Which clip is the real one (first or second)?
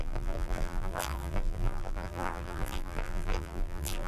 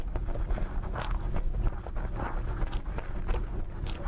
second